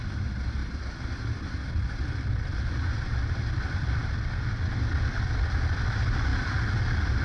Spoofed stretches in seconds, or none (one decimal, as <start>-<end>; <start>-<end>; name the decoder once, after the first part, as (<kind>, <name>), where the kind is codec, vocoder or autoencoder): 0.0-4.0 (vocoder, BigVGAN v2); 5.0-7.2